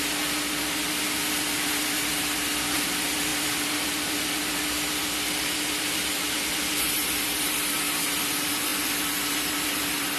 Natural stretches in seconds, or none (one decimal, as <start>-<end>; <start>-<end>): 0.0-10.2